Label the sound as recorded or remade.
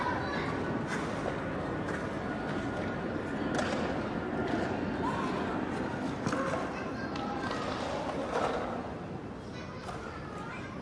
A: recorded